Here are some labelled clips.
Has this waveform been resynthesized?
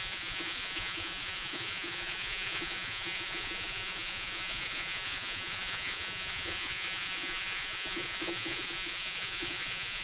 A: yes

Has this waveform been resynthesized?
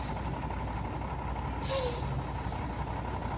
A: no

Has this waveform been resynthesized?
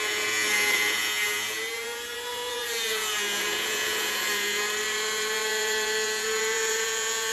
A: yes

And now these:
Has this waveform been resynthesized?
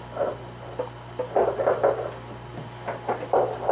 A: no